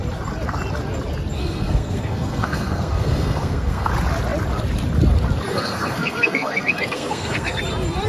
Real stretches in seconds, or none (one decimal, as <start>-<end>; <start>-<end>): 0.0-1.4; 3.9-5.5; 7.6-8.1